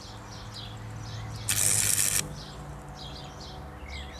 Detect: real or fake real